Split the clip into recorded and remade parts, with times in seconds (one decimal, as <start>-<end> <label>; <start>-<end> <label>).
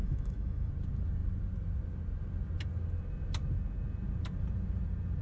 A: 0.0-0.7 remade; 0.7-5.2 recorded